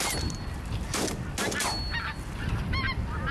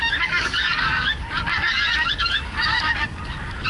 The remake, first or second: second